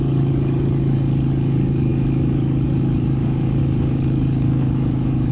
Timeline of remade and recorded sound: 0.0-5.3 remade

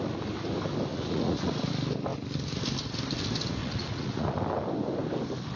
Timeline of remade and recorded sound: 0.0-0.9 recorded; 0.9-1.7 remade; 1.7-3.6 recorded; 3.6-4.4 remade; 4.4-5.6 recorded

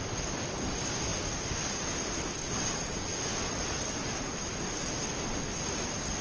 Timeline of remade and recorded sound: 0.0-6.2 recorded

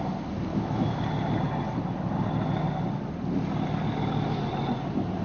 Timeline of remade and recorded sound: 0.0-0.5 recorded; 0.5-1.0 remade; 1.0-5.2 recorded